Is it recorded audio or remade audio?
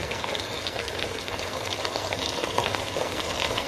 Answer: remade